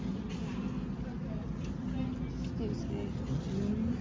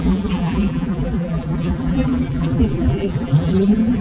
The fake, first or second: second